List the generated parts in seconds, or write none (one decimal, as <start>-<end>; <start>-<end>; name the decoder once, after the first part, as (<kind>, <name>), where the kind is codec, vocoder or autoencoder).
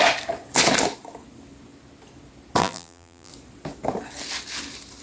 2.6-3.3 (vocoder, BigVGAN v2)